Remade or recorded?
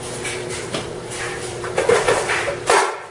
remade